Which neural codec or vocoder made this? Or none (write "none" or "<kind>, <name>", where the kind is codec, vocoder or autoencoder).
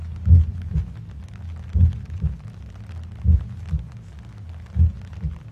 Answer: none